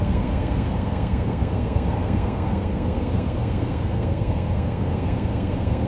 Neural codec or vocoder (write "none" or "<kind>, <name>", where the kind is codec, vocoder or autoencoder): codec, SNAC